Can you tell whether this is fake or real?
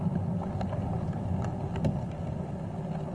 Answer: real